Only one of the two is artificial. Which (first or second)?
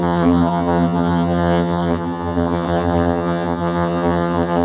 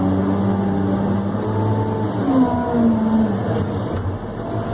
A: first